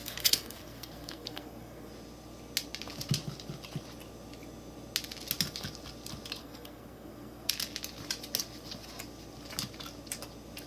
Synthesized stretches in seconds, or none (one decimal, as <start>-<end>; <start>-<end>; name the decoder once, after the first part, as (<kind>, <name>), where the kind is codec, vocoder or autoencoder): 0.0-1.9 (codec, SNAC); 6.4-7.5